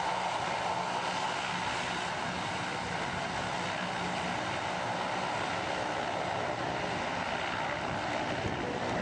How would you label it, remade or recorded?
recorded